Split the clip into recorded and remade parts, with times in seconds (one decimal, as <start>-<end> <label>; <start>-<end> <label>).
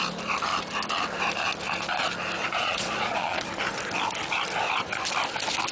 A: 0.0-2.4 recorded; 2.4-3.4 remade; 3.4-5.7 recorded